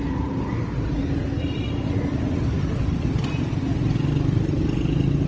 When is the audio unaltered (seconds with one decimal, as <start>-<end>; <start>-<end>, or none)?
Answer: 0.0-5.3